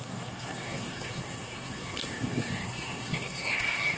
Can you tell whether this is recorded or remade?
remade